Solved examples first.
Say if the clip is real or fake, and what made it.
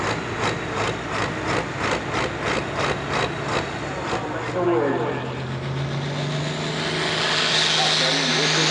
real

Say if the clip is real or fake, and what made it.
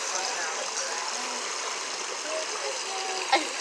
real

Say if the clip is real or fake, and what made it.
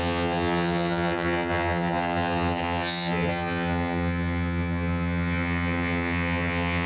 fake, vocoder, HiFi-GAN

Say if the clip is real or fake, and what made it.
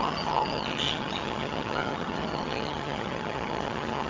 fake, vocoder, HiFi-GAN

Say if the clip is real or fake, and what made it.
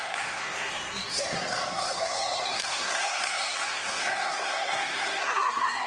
fake, codec, SNAC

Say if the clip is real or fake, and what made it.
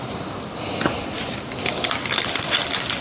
fake, vocoder, BigVGAN v2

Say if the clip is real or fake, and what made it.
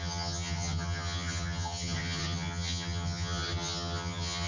fake, vocoder, HiFi-GAN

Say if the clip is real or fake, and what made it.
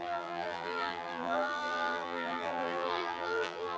fake, vocoder, BigVGAN v2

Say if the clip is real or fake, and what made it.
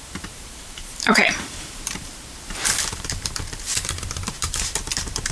fake, vocoder, BigVGAN v2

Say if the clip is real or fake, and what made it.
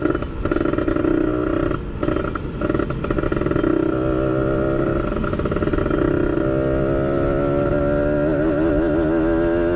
real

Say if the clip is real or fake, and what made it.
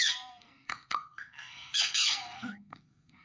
fake, codec, SNAC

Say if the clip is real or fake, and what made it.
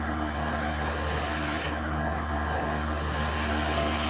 fake, codec, SNAC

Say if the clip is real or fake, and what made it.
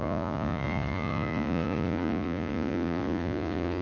fake, vocoder, Vocos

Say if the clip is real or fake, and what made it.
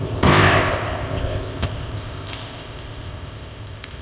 fake, codec, ZipCodec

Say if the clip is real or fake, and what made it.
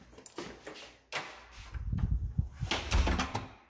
real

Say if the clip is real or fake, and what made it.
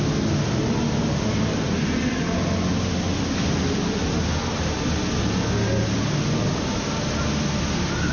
real